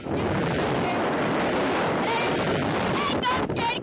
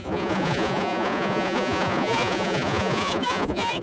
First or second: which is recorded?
first